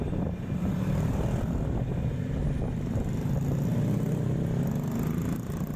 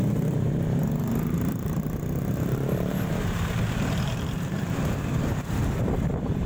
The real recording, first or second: first